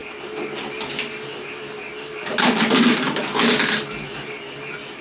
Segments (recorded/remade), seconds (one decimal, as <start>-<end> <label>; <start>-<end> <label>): 0.0-5.0 recorded